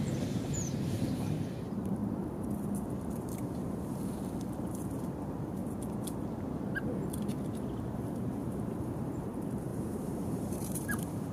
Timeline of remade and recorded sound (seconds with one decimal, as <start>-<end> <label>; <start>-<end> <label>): 0.0-2.0 remade; 2.0-2.8 recorded; 2.8-5.6 remade; 5.6-7.9 recorded; 7.9-11.3 remade